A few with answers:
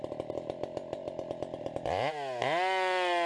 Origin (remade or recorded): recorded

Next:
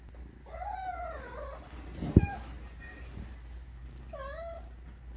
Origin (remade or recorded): recorded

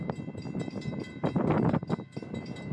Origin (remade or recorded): remade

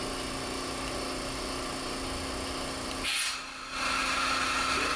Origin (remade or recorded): recorded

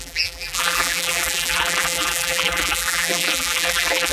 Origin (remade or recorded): remade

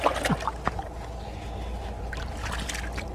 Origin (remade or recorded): recorded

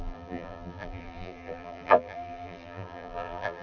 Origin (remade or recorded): remade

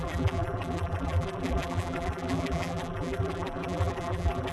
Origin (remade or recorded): remade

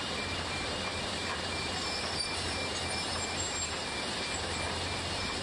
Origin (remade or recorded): remade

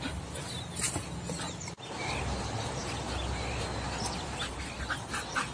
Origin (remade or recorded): recorded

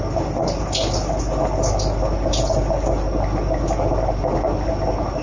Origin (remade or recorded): recorded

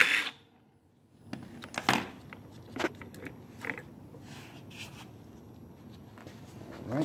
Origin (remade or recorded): recorded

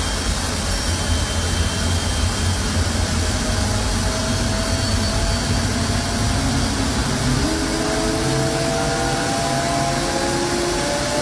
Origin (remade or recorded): recorded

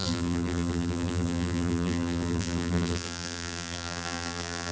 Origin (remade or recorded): remade